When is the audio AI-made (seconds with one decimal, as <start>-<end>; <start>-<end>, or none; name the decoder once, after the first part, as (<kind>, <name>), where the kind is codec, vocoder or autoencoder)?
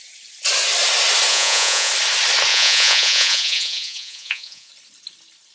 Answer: 1.3-1.9 (vocoder, Vocos); 2.5-4.7